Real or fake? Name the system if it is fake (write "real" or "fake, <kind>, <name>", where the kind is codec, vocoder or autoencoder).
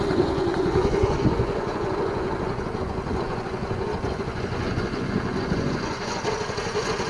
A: fake, vocoder, Vocos